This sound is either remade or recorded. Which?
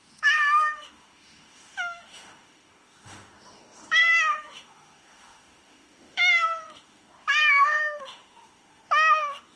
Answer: remade